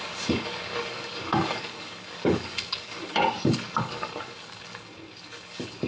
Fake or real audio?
fake